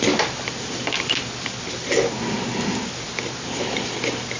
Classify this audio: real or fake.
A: real